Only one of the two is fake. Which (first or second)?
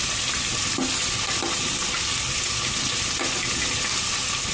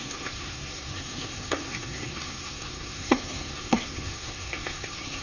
second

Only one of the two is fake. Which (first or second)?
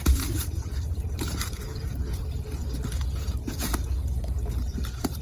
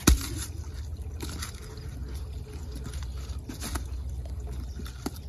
first